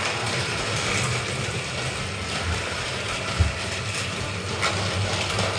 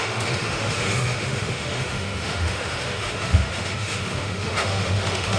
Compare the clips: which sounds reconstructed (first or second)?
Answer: second